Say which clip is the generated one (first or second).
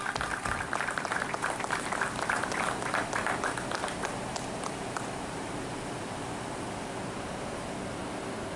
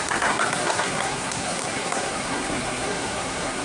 second